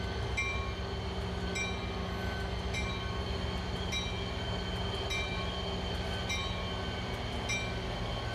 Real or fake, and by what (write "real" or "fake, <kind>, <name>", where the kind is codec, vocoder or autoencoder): real